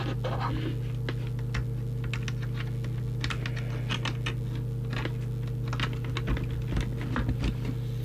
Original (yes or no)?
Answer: yes